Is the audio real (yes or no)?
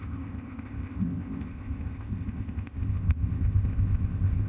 no